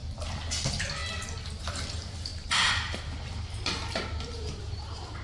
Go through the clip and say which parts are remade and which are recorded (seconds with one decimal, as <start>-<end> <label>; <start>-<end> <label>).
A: 0.0-0.6 recorded; 0.6-1.0 remade; 1.0-1.6 recorded; 1.6-5.2 remade